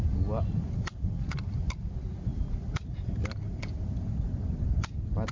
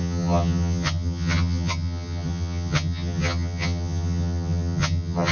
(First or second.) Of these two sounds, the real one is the first